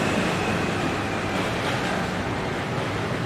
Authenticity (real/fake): real